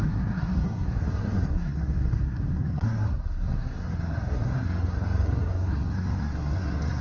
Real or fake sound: fake